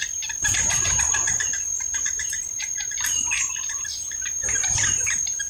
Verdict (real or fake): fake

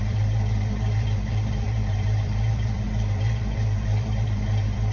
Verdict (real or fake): fake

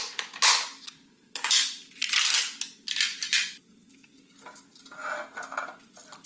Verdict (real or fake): real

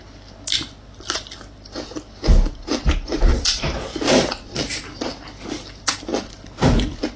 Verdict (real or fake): real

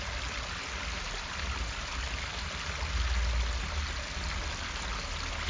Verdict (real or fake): real